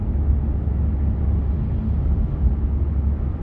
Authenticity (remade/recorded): recorded